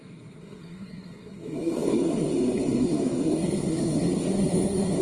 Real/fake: fake